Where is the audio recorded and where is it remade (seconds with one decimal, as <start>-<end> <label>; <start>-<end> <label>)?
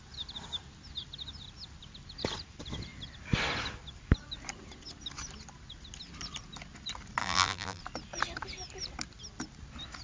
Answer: 0.0-7.2 recorded; 7.2-7.8 remade; 7.8-10.0 recorded